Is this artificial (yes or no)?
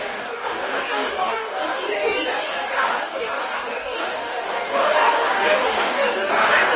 yes